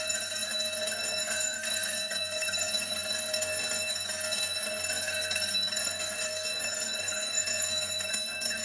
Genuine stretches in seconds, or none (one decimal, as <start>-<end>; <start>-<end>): none